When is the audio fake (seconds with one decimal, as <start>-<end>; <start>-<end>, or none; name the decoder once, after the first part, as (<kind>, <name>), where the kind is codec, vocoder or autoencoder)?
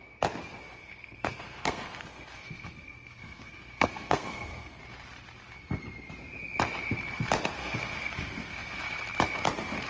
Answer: 0.8-4.8 (codec, SNAC); 7.6-8.8